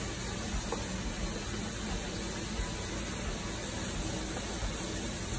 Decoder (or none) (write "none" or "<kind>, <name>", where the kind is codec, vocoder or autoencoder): none